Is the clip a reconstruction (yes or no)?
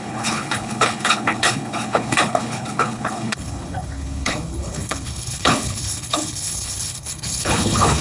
yes